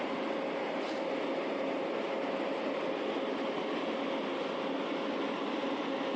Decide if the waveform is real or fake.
real